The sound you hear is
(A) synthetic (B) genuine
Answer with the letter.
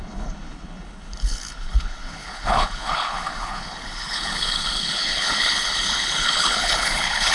A